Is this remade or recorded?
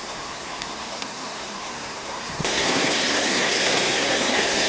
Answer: remade